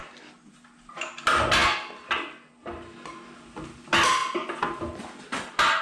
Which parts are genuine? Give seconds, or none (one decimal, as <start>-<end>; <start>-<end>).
0.0-5.8